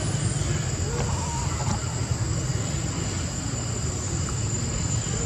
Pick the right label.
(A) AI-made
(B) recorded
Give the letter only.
B